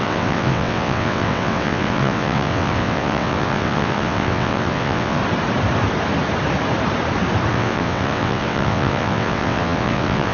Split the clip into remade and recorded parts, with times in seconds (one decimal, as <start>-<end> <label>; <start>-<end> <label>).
0.0-5.2 remade; 5.2-7.5 recorded; 7.5-10.3 remade